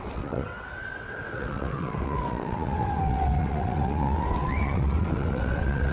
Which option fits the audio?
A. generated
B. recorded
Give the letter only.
A